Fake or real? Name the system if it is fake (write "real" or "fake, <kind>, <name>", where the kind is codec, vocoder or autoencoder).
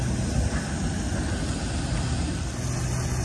real